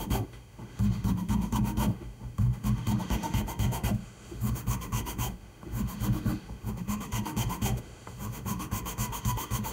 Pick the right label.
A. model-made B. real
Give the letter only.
A